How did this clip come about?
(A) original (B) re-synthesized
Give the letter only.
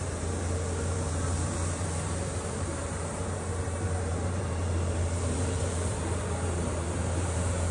B